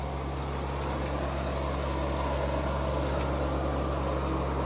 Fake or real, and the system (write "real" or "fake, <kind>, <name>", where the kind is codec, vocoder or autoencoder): real